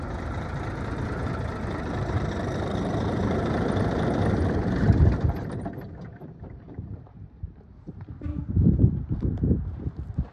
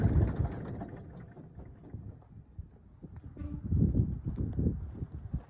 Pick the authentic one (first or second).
second